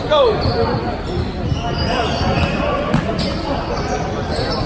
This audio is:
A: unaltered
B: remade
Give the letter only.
A